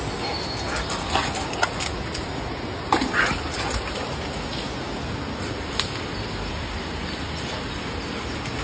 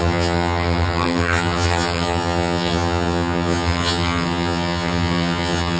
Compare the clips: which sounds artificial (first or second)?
second